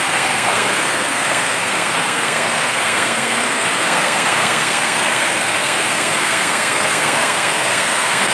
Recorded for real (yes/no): no